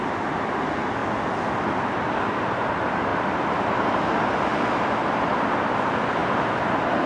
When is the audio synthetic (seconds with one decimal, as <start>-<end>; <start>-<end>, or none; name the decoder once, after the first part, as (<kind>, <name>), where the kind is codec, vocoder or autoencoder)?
3.1-4.1 (vocoder, BigVGAN v2); 6.2-7.1